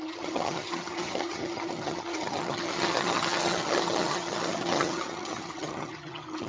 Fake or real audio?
fake